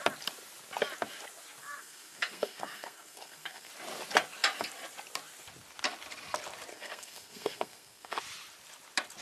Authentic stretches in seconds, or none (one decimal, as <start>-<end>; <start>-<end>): 0.0-1.6; 3.7-6.7; 8.2-9.2